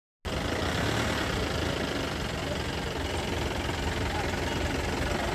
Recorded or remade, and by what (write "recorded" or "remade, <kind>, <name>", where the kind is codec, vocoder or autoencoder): recorded